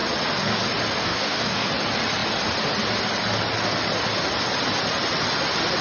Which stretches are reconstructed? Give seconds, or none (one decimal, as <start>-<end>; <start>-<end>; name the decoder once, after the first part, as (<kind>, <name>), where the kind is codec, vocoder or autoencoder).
1.0-1.7 (codec, DAC)